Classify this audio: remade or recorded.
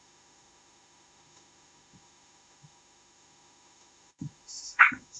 remade